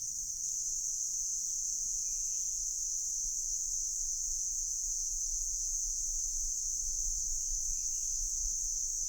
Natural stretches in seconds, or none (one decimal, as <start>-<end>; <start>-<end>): 0.0-1.1; 2.6-4.0; 6.0-9.1

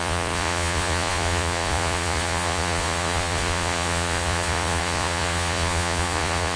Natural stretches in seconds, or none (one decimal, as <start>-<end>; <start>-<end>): none

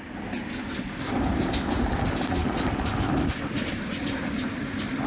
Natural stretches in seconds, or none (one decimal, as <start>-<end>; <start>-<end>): 0.0-5.1

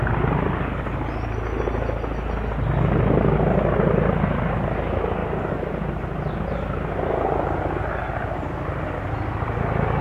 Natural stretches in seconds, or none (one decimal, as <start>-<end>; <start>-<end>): 0.0-10.0

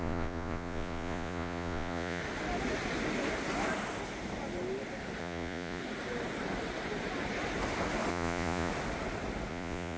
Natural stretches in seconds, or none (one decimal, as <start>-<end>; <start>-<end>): 2.2-5.2; 5.8-8.1; 8.7-9.5